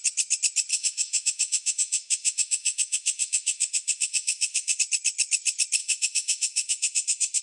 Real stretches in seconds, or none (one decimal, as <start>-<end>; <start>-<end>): 0.0-0.7; 4.8-5.8